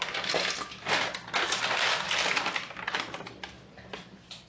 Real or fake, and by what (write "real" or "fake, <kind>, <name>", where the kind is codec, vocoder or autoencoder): real